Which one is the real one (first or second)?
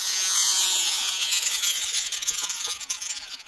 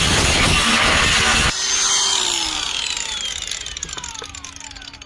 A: second